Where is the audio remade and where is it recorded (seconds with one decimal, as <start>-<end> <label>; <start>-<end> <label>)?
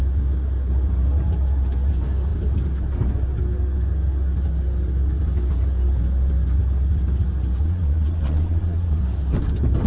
0.0-7.6 recorded; 7.6-9.0 remade; 9.0-9.9 recorded